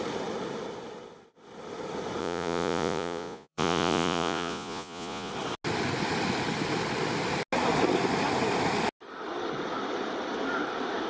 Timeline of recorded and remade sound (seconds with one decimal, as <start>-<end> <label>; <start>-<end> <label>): 0.0-2.2 recorded; 2.2-5.3 remade; 5.3-11.1 recorded